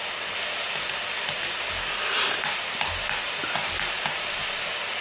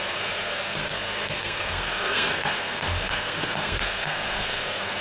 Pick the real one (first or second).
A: first